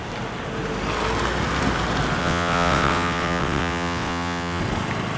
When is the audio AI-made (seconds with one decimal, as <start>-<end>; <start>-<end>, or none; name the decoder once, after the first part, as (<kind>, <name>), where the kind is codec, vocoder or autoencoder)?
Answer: 2.2-4.6 (vocoder, WaveNeXt)